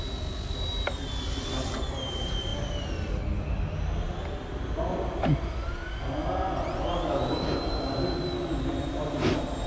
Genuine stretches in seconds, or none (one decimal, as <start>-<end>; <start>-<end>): 0.0-9.7